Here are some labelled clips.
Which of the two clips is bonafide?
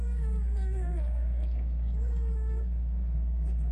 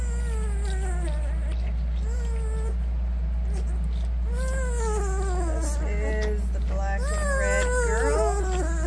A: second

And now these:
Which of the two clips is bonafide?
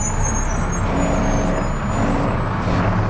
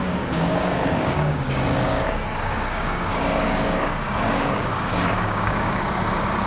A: first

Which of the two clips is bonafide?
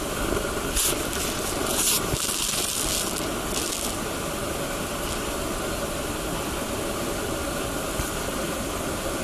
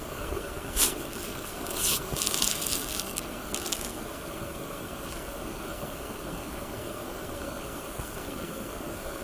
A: first